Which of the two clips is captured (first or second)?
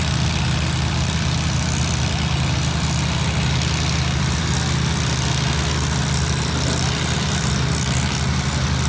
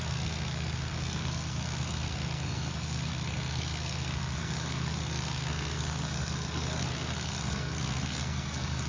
first